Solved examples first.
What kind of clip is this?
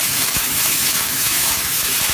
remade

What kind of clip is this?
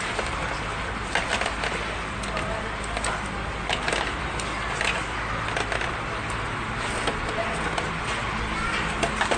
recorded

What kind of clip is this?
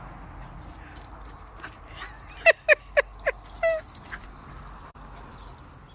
recorded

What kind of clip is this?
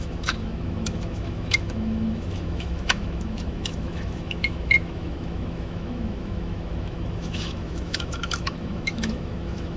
remade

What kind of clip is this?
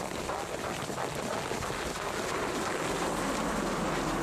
recorded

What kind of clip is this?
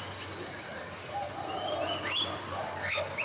recorded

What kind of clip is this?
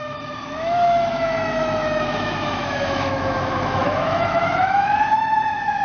remade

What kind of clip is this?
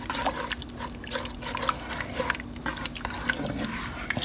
recorded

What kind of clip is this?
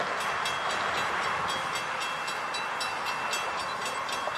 recorded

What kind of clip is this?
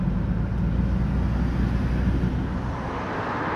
recorded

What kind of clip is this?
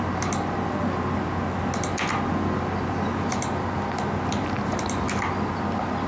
recorded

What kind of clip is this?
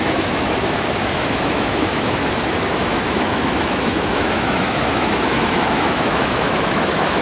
remade